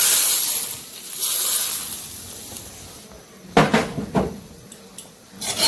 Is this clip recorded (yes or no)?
yes